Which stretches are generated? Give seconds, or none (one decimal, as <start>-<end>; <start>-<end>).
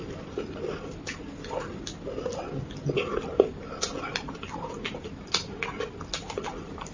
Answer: none